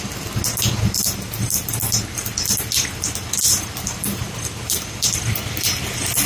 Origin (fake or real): real